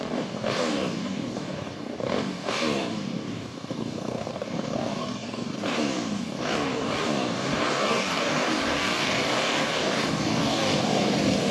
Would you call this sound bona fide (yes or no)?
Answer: no